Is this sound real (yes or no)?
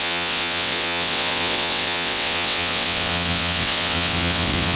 no